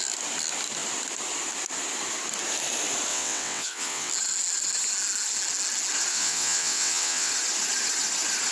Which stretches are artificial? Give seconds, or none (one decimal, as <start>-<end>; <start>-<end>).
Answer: 3.1-4.1; 6.1-7.3